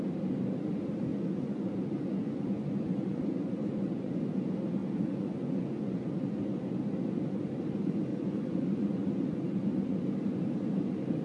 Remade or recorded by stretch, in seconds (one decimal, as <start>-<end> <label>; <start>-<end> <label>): 0.0-1.1 recorded; 1.1-4.2 remade; 4.2-4.8 recorded; 4.8-6.6 remade; 6.6-8.1 recorded; 8.1-10.0 remade; 10.0-11.2 recorded